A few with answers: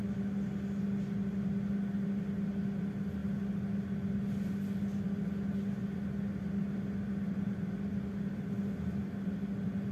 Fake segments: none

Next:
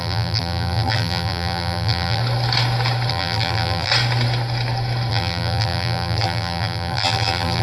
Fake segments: 0.0-2.2 (vocoder, BigVGAN v2); 3.1-3.9; 5.1-7.6

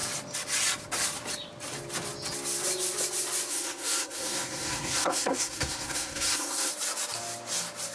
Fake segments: 3.5-6.7 (codec, SNAC)